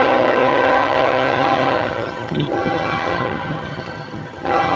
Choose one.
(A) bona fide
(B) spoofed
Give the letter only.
B